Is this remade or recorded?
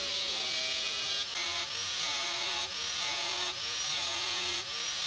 recorded